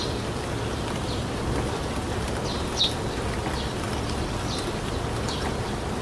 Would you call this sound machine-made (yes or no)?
no